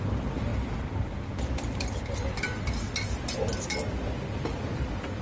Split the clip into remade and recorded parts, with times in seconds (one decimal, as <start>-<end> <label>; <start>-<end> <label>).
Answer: 0.0-5.2 recorded